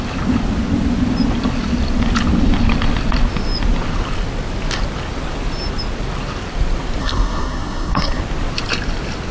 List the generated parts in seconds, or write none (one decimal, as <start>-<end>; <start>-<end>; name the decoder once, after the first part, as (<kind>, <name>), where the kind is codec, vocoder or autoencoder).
7.0-8.2 (codec, SNAC)